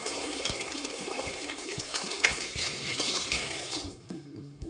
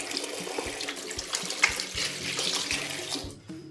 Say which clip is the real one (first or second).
second